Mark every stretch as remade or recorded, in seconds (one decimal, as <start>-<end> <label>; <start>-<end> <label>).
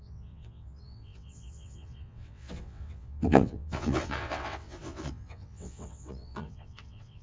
0.0-7.2 remade